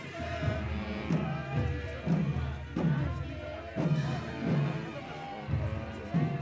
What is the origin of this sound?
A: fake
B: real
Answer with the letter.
B